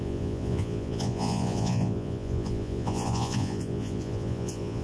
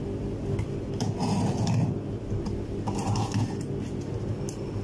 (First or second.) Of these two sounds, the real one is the second